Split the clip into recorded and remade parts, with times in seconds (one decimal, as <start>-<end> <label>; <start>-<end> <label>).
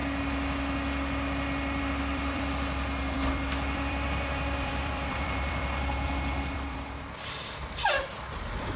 0.0-1.8 recorded; 1.8-8.8 remade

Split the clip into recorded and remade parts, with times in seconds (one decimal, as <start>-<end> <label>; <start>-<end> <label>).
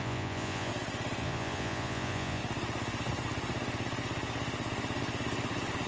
0.0-0.7 remade; 0.7-1.2 recorded; 1.2-2.4 remade; 2.4-5.9 recorded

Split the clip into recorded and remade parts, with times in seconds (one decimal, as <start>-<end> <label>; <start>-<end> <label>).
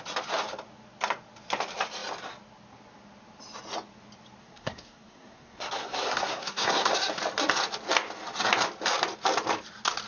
0.0-4.4 recorded; 4.4-6.9 remade; 6.9-10.1 recorded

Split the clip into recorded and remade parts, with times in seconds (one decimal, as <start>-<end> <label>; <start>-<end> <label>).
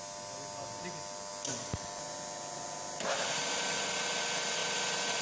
0.0-5.2 recorded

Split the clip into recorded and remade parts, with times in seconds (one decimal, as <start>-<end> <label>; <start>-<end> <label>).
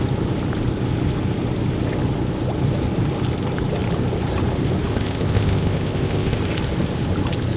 0.0-4.9 recorded; 4.9-6.4 remade; 6.4-7.6 recorded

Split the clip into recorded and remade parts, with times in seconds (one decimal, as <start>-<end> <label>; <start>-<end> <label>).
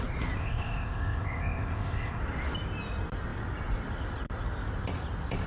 0.0-0.4 recorded; 0.4-2.2 remade; 2.2-5.5 recorded